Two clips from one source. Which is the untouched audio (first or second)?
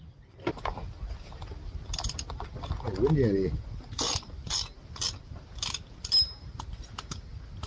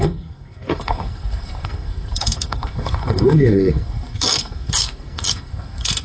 first